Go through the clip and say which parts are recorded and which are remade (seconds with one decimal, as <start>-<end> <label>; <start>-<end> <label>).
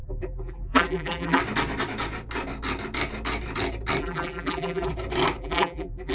0.0-1.4 remade; 1.4-4.0 recorded; 4.0-4.9 remade; 4.9-5.4 recorded; 5.4-6.1 remade